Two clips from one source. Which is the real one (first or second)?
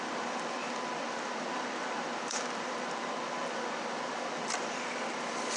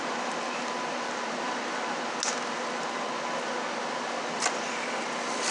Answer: second